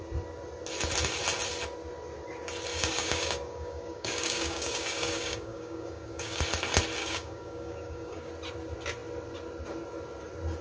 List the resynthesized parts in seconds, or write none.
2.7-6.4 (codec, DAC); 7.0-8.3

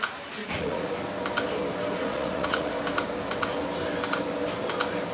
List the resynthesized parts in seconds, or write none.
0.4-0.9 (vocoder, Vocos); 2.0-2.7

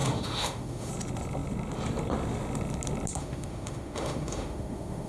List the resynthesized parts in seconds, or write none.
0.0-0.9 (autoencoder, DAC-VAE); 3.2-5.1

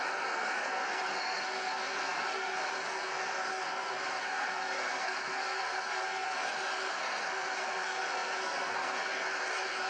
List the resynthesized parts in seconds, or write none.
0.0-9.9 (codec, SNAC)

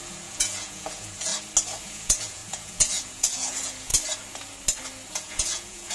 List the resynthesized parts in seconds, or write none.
0.0-1.3 (vocoder, Vocos); 1.8-3.9; 5.1-5.9